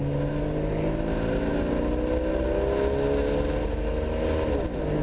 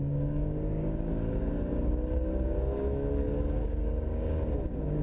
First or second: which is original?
first